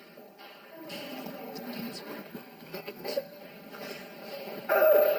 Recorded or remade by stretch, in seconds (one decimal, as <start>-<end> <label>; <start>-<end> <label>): 0.0-2.3 recorded; 2.3-3.4 remade; 3.4-5.2 recorded